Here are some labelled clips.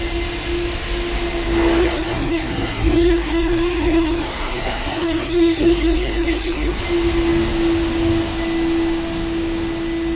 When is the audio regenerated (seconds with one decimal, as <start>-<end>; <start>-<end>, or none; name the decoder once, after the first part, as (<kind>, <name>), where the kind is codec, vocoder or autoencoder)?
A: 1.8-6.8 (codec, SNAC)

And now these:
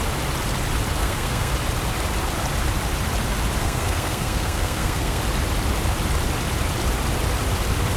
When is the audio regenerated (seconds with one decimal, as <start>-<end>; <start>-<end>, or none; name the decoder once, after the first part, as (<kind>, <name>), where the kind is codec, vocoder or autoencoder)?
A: 1.0-1.5 (codec, SNAC); 3.6-5.2

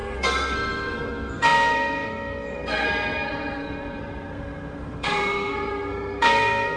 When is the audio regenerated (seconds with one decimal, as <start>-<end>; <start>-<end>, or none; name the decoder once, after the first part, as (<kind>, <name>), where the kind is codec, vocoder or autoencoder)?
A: 0.0-6.8 (codec, SNAC)